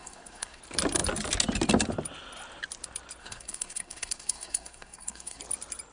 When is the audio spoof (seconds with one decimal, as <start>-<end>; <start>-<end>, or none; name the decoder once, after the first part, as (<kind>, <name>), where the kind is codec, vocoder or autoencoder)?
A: 0.0-0.6 (codec, SNAC); 3.2-5.4